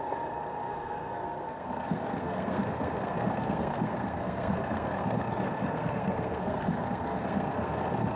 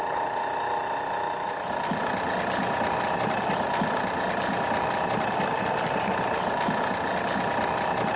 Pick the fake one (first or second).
first